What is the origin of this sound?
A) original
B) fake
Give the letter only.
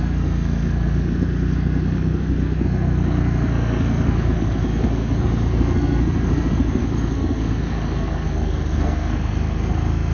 B